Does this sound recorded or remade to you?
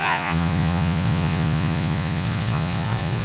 remade